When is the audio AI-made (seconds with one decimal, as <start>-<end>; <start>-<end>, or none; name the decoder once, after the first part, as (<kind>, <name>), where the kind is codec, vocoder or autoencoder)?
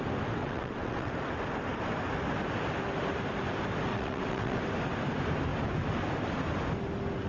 0.4-1.1 (vocoder, WaveNeXt); 3.9-4.6